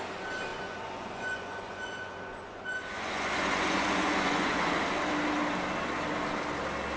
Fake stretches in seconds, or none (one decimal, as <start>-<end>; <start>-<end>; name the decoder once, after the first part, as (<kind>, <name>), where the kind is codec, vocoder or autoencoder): 0.5-4.7 (vocoder, Vocos)